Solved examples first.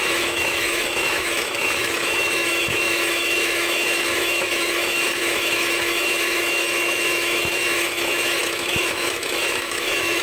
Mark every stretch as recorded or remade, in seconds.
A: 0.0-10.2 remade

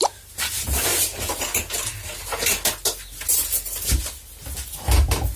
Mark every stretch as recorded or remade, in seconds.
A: 0.0-5.4 recorded

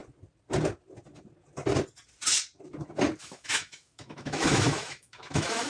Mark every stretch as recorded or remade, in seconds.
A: 0.0-3.2 recorded; 3.2-5.7 remade

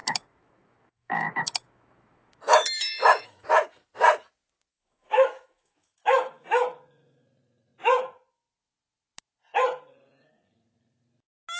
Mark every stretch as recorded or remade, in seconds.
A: 0.0-3.5 remade; 3.5-4.7 recorded; 4.7-6.6 remade; 6.6-11.6 recorded

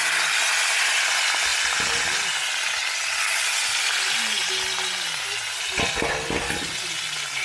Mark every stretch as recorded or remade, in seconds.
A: 0.0-7.4 recorded

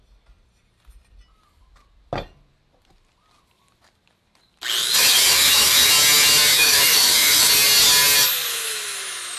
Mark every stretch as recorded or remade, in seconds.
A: 0.0-4.8 recorded; 4.8-5.9 remade; 5.9-6.5 recorded; 6.5-7.5 remade; 7.5-8.5 recorded; 8.5-9.4 remade

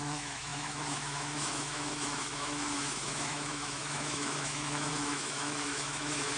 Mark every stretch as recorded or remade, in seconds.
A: 0.0-6.4 remade

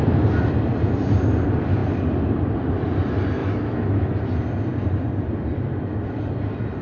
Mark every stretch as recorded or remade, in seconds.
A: 0.0-3.4 recorded; 3.4-4.2 remade; 4.2-6.8 recorded